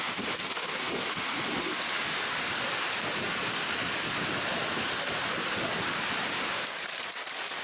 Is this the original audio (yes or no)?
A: yes